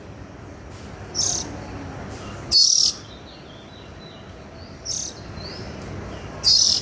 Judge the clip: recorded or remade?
remade